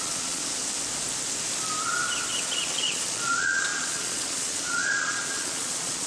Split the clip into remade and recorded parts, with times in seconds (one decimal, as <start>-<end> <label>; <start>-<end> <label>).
0.0-0.4 remade; 0.4-2.3 recorded; 2.3-6.1 remade